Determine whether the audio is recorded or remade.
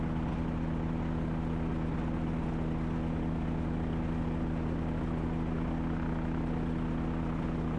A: recorded